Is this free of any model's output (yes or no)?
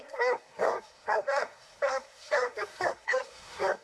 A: no